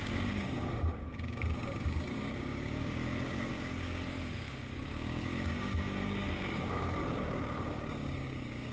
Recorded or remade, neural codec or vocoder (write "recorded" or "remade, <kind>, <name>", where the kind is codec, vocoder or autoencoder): remade, codec, DAC